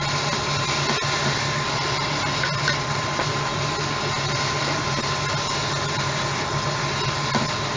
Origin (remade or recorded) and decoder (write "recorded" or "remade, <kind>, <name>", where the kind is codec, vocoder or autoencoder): recorded